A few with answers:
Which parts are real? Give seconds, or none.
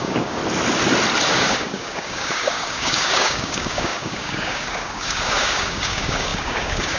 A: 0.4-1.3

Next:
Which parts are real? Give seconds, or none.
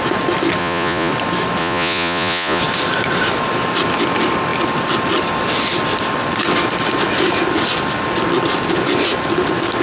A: 0.0-0.6; 1.1-1.6; 2.6-9.8